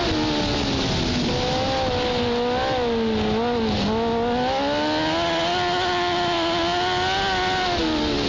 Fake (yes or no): no